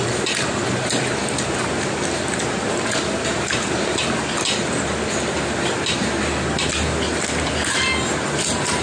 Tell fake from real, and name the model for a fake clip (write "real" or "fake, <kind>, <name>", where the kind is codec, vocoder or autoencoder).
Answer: real